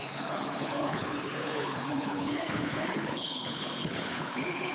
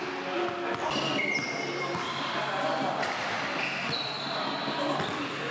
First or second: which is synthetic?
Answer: first